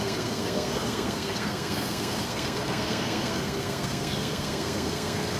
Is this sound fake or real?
fake